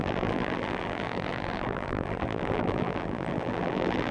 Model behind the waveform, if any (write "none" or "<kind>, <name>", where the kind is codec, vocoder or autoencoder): vocoder, BigVGAN v2